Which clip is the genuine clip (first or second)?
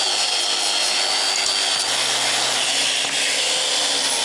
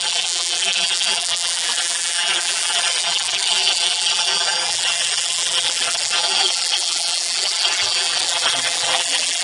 first